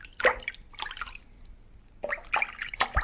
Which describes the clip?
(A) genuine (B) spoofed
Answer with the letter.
A